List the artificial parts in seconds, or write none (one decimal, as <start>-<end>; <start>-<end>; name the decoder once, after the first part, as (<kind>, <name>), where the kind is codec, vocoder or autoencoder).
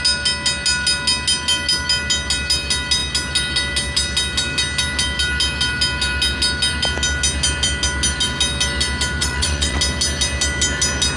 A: 9.2-9.8 (vocoder, Vocos)